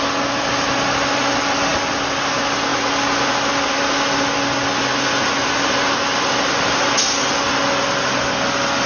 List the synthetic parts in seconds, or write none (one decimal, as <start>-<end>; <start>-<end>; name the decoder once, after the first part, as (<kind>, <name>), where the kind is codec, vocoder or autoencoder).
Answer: none